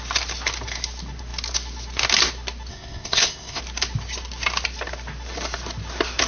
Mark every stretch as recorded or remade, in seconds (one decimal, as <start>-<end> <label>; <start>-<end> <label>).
0.0-2.7 recorded; 2.7-3.6 remade; 3.6-6.3 recorded

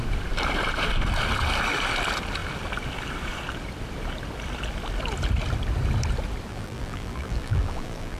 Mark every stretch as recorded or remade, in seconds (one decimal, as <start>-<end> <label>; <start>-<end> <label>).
0.0-6.5 recorded; 6.5-8.2 remade

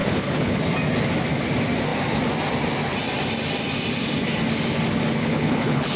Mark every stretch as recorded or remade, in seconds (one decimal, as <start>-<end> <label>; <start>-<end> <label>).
0.0-0.6 remade; 0.6-5.2 recorded; 5.2-6.0 remade

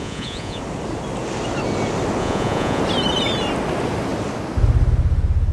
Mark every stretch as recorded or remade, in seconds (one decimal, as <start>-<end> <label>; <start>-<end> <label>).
0.0-0.6 remade; 0.6-2.2 recorded; 2.2-2.8 remade; 2.8-5.5 recorded

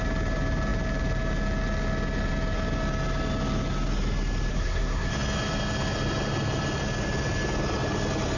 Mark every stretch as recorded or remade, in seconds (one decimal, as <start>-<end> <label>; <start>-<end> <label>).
0.0-4.5 recorded; 4.5-5.1 remade; 5.1-8.4 recorded

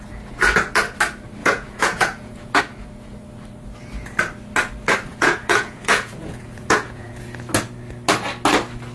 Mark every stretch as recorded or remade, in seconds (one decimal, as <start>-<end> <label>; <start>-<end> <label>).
0.0-1.4 recorded; 1.4-2.6 remade; 2.6-5.1 recorded; 5.1-7.1 remade; 7.1-8.9 recorded

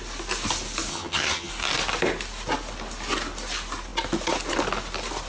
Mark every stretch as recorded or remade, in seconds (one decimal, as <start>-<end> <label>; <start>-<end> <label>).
0.0-0.9 recorded; 0.9-1.5 remade; 1.5-5.3 recorded

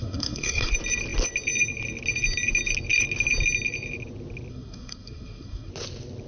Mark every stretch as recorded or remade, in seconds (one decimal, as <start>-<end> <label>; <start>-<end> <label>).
0.0-0.7 remade; 0.7-4.5 recorded; 4.5-5.7 remade; 5.7-6.3 recorded